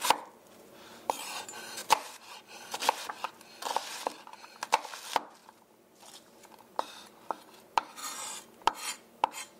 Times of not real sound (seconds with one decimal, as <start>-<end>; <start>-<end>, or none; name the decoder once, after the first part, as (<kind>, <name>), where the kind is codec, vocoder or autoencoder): 1.8-2.3 (vocoder, BigVGAN v2); 3.8-4.6; 5.4-7.1

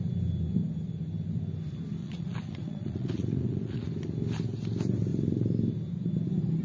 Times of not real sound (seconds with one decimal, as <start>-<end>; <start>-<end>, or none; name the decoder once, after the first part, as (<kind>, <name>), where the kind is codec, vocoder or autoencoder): 2.0-3.9 (vocoder, Vocos)

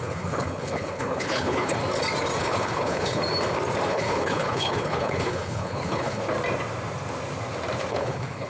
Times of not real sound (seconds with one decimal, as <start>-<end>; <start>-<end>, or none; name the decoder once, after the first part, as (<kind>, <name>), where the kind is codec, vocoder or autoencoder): 0.0-1.8 (codec, HILCodec); 2.4-3.2; 3.9-6.2; 7.9-8.5

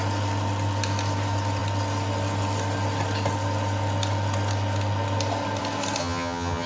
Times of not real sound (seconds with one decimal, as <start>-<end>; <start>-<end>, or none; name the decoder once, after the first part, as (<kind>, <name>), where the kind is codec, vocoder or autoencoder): 6.0-6.7 (vocoder, HiFi-GAN)

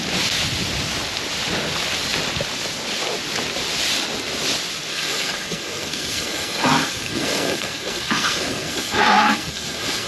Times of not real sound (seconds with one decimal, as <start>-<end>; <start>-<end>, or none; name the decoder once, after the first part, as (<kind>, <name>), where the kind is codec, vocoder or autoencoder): 4.9-10.1 (codec, SNAC)

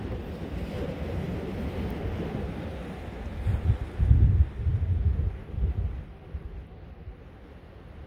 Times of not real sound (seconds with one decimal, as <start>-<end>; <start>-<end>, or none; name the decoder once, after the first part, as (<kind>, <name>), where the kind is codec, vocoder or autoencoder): none

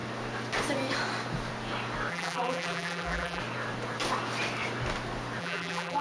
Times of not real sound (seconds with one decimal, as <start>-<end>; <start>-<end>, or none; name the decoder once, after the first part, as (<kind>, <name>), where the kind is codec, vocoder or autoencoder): 2.1-3.4 (vocoder, BigVGAN v2); 5.4-6.0